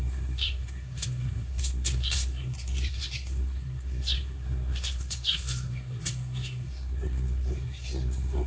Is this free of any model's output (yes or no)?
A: no